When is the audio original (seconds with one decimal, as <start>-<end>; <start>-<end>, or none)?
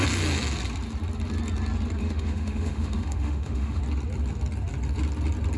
0.0-2.0; 3.8-5.6